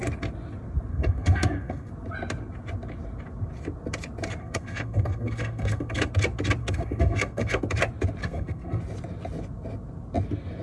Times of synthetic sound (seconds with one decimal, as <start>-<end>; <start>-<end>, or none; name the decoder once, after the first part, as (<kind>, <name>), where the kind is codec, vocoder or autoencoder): 0.9-1.9 (codec, SNAC); 4.4-6.1; 6.6-7.6; 8.2-8.8